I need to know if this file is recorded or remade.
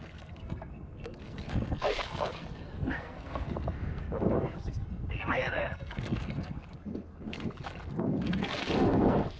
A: remade